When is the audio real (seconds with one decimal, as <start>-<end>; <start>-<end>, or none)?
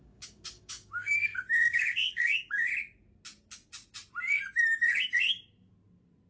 2.7-6.3